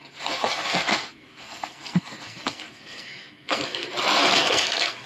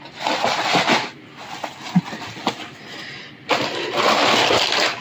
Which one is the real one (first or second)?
second